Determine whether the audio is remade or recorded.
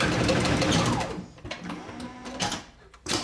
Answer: remade